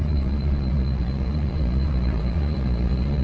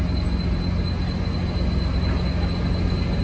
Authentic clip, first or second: second